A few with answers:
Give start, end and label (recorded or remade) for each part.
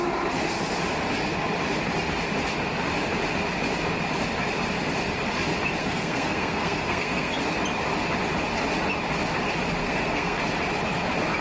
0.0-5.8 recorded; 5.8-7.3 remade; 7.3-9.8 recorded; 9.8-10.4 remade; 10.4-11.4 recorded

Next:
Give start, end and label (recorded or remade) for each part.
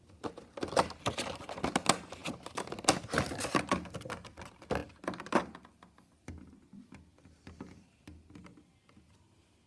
0.0-9.7 recorded